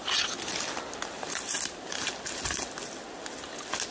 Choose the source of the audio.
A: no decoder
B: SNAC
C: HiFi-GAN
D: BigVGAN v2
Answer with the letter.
A